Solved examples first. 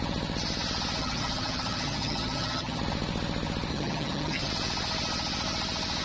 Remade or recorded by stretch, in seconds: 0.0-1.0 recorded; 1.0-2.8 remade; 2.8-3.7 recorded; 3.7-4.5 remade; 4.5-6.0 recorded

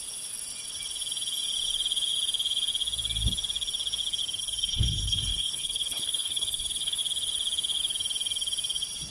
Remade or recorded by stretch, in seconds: 0.0-4.4 recorded; 4.4-7.0 remade; 7.0-9.1 recorded

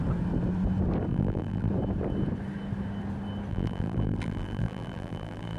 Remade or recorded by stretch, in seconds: 0.0-1.1 recorded; 1.1-1.7 remade; 1.7-3.5 recorded; 3.5-5.6 remade